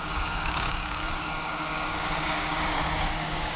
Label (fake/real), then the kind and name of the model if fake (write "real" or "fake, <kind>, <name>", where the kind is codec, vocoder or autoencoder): fake, codec, DAC